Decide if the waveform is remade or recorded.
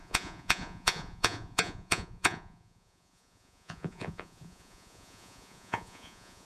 remade